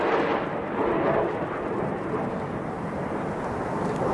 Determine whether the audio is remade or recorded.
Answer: recorded